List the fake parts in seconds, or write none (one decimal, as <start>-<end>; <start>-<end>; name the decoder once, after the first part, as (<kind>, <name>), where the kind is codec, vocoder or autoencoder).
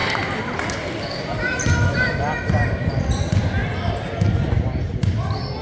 none